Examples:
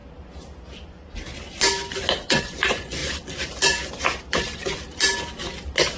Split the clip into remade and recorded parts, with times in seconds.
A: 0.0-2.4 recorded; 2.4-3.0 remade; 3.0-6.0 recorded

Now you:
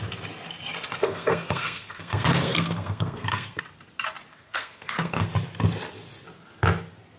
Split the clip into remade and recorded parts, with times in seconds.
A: 0.0-1.0 recorded; 1.0-3.6 remade; 3.6-4.3 recorded; 4.3-5.3 remade; 5.3-7.2 recorded

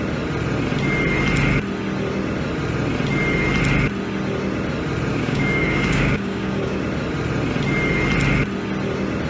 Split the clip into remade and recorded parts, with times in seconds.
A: 0.0-5.1 recorded; 5.1-6.8 remade; 6.8-9.3 recorded